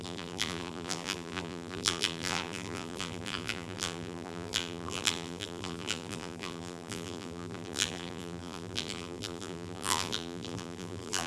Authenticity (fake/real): fake